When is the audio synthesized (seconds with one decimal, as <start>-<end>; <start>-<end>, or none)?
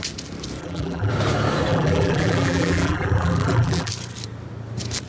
0.6-1.1; 1.7-3.9